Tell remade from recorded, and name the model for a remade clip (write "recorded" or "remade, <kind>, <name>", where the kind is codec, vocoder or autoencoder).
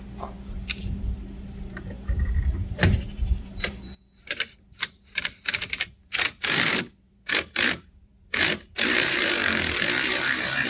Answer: remade, vocoder, BigVGAN v2